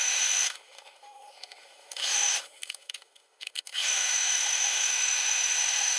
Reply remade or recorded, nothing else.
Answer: remade